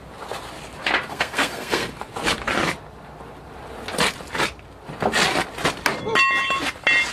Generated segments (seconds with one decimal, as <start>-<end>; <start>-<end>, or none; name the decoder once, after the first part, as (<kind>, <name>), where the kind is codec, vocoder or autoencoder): 1.1-1.9 (codec, SNAC)